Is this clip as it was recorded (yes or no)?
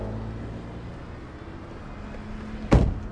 yes